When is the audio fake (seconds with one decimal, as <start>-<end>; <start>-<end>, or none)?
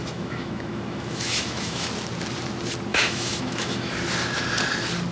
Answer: 0.0-1.9; 2.9-3.9